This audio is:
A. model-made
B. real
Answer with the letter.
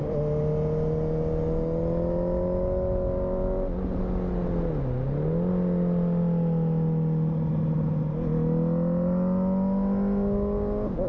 B